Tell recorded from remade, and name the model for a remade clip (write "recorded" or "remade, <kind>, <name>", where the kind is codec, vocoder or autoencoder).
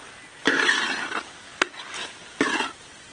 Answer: recorded